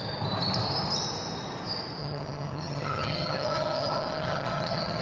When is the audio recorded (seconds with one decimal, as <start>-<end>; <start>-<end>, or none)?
0.0-2.0